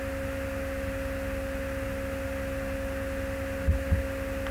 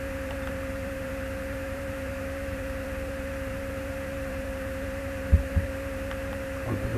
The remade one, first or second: second